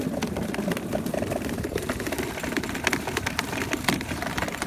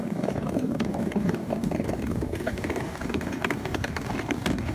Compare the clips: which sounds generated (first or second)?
second